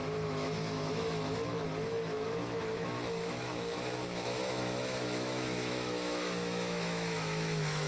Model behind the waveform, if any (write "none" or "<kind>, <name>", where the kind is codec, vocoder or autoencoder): autoencoder, DAC-VAE